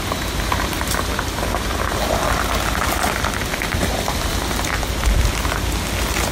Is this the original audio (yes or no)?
yes